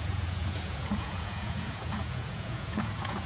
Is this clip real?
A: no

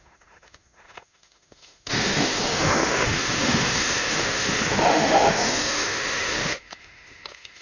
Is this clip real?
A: no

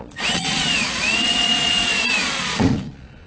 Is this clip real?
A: no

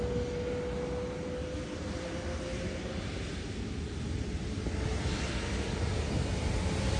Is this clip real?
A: yes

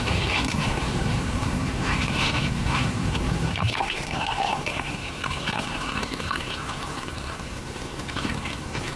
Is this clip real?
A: no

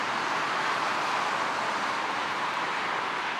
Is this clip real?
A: yes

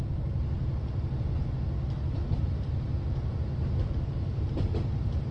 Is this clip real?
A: yes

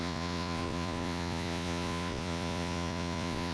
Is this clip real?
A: no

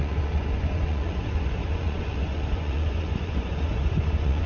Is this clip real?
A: no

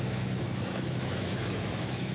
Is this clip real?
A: no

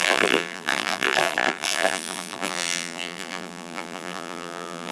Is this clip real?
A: no